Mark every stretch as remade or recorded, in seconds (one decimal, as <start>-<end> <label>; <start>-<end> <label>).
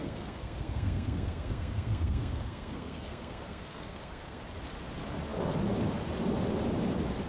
0.0-4.4 remade; 4.4-7.3 recorded